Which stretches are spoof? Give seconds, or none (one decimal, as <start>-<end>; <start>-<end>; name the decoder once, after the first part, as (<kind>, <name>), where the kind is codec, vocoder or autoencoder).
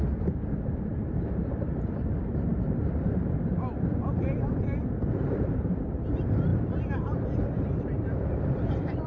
0.0-9.1 (vocoder, BigVGAN v2)